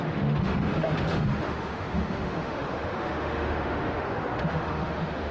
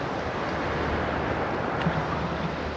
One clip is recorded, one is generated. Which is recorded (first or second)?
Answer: second